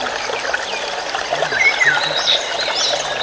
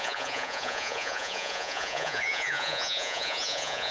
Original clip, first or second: first